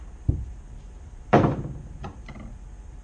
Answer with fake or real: fake